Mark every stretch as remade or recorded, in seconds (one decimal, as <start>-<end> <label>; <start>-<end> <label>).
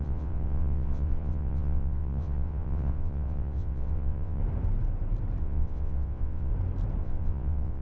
0.0-4.4 remade; 4.4-5.4 recorded; 5.4-6.5 remade; 6.5-7.0 recorded; 7.0-7.8 remade